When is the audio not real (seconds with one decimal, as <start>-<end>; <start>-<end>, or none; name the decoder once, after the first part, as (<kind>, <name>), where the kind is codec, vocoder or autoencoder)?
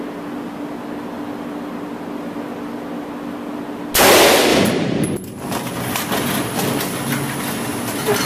4.5-6.2 (vocoder, BigVGAN v2)